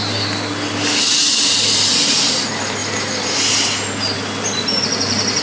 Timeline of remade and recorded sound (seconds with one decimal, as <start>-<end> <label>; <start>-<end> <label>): 0.0-5.4 recorded